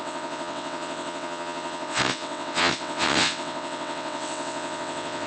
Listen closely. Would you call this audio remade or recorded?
remade